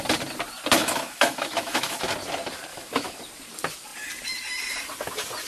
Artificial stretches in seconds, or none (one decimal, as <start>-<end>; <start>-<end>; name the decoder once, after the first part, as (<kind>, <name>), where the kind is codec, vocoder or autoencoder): 0.8-2.0 (autoencoder, DAC-VAE); 2.7-3.2